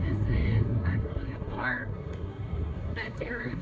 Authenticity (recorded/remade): remade